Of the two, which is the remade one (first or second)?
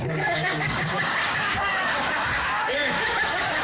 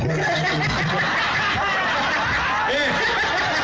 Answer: first